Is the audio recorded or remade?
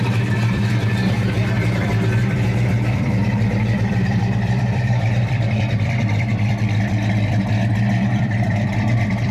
remade